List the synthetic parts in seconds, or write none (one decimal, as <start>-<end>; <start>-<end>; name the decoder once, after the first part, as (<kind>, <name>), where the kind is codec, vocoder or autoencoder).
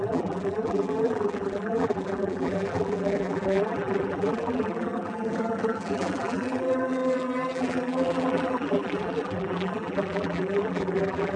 0.0-11.4 (vocoder, BigVGAN v2)